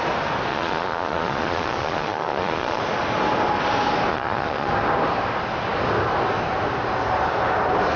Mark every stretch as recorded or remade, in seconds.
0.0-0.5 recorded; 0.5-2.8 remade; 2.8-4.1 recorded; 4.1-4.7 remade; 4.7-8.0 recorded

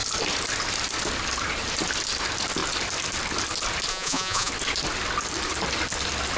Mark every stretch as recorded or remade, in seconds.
0.0-3.9 recorded; 3.9-4.5 remade; 4.5-6.4 recorded

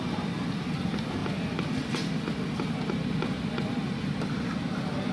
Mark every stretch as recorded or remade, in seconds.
0.0-5.1 recorded

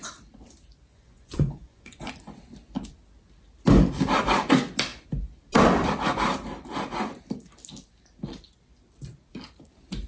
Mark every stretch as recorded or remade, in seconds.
0.0-0.9 recorded; 0.9-2.1 remade; 2.1-10.1 recorded